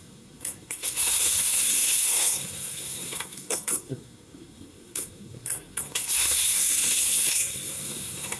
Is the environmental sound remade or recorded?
remade